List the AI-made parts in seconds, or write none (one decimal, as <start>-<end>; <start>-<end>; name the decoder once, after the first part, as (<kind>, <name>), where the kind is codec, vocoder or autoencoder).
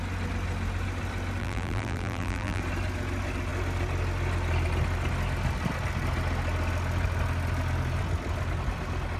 1.4-2.6 (vocoder, BigVGAN v2)